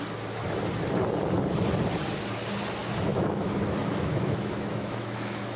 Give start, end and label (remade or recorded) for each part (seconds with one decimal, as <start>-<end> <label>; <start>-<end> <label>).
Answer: 0.0-2.8 recorded; 2.8-3.4 remade; 3.4-3.8 recorded; 3.8-5.6 remade